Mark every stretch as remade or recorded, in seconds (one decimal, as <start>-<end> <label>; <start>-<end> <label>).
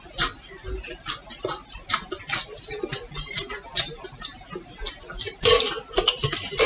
0.0-6.7 remade